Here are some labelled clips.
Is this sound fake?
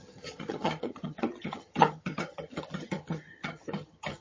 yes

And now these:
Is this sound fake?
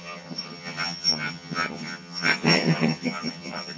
yes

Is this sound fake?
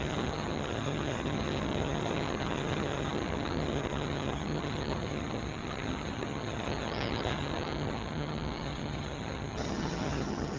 yes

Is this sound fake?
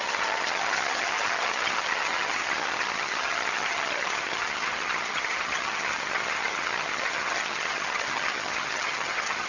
yes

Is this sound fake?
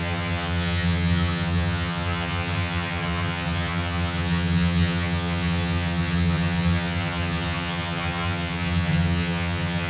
yes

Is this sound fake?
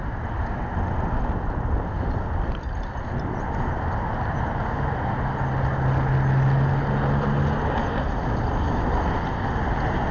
no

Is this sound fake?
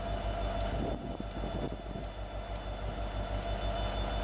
no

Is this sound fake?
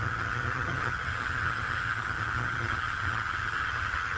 yes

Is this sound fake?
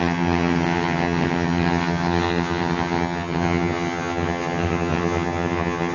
yes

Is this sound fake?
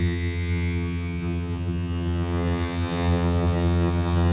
yes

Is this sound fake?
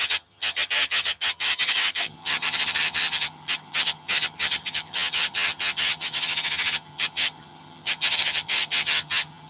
yes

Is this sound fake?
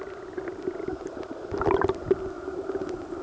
no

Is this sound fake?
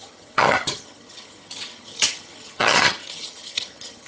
yes